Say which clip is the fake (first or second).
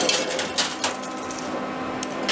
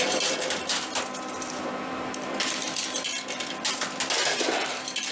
second